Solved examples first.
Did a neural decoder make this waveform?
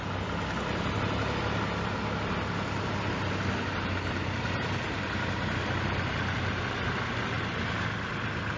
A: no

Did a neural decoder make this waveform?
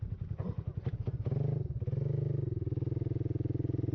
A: no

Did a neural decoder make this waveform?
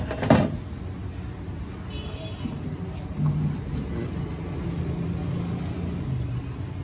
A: no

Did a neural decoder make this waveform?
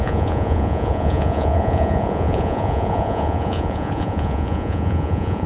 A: yes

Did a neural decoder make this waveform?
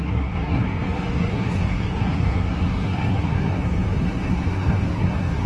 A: yes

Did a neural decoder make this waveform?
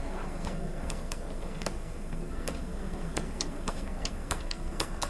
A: yes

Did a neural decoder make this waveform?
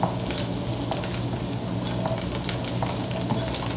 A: no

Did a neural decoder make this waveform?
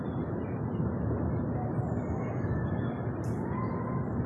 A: no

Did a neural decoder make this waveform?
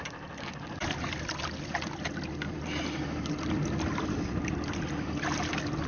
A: no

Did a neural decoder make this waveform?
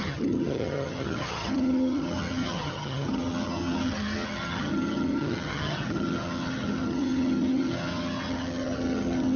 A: yes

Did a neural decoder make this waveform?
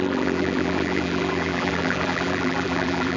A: yes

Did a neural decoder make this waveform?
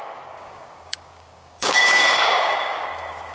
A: yes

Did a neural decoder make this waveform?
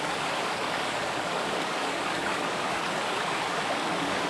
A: yes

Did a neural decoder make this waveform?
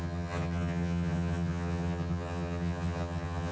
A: yes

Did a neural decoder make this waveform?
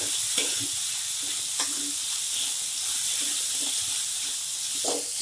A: no